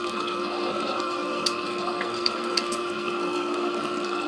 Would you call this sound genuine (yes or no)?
no